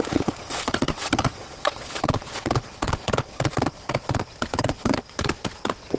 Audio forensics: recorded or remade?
remade